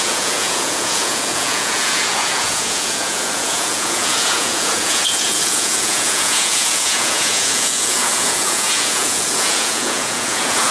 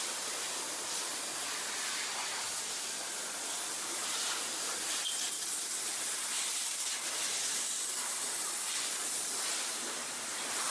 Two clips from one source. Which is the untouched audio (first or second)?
second